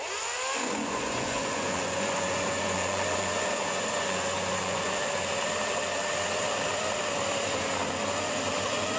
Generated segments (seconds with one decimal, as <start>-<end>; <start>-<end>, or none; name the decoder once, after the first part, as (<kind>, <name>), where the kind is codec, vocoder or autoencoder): 0.5-4.9 (vocoder, Vocos)